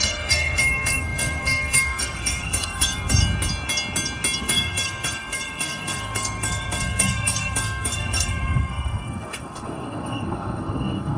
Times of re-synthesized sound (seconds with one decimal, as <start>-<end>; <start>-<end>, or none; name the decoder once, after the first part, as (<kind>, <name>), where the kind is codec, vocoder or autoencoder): 0.0-3.2 (codec, SNAC); 4.4-11.2